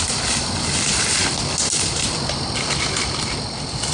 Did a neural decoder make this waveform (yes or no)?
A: no